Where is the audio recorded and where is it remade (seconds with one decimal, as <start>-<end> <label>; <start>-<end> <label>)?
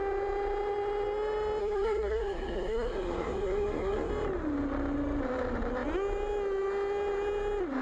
0.0-1.6 recorded; 1.6-4.1 remade; 4.1-7.8 recorded